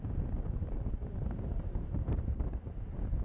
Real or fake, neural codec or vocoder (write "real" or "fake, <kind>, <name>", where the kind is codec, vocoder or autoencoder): fake, vocoder, BigVGAN v2